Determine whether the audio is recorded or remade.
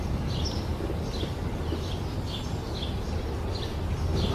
recorded